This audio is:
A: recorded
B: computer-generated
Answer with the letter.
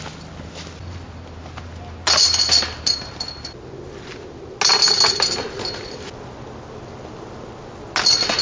A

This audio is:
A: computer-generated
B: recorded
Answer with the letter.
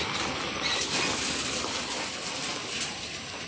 B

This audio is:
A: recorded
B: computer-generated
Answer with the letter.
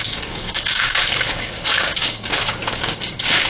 B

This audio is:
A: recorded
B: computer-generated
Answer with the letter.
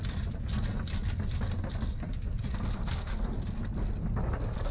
A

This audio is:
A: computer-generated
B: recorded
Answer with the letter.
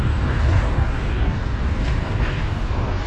A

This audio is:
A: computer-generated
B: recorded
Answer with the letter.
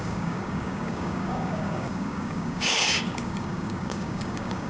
A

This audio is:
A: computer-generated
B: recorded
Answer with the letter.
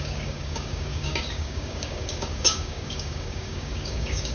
A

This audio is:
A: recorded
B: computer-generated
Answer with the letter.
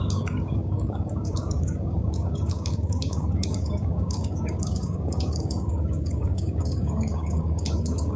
B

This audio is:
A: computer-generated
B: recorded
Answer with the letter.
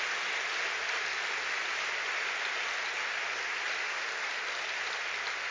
B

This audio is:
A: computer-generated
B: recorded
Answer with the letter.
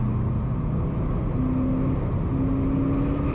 B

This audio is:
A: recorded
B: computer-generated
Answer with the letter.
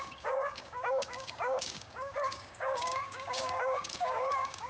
B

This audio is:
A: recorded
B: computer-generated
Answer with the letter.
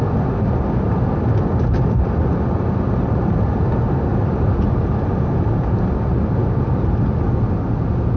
A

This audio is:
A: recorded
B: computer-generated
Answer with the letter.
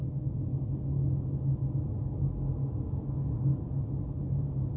A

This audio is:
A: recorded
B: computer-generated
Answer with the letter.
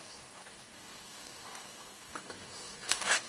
B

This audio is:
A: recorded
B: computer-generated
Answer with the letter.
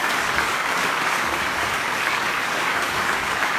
B